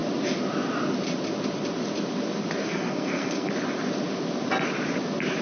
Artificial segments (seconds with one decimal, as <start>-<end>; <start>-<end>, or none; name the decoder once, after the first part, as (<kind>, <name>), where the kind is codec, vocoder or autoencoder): 2.6-3.5 (codec, SNAC)